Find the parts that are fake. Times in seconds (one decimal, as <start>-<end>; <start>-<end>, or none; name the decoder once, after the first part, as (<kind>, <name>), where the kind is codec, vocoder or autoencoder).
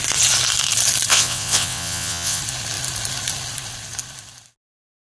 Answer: 1.1-2.4 (vocoder, WaveNeXt)